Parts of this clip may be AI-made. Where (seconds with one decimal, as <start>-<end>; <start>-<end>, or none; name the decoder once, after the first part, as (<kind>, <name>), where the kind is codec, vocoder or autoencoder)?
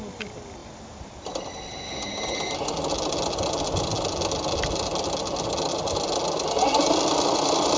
none